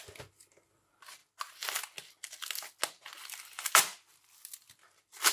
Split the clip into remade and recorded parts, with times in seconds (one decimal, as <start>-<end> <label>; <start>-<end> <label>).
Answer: 0.0-5.3 recorded